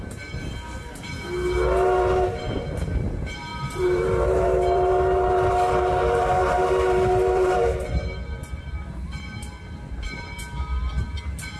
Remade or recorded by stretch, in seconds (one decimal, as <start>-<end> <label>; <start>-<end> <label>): 0.0-3.5 recorded; 3.5-8.6 remade; 8.6-11.6 recorded